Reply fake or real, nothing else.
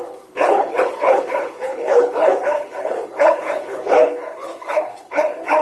fake